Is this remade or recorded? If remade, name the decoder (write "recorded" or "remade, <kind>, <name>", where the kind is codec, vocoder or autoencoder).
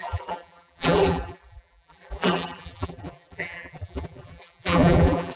remade, vocoder, BigVGAN v2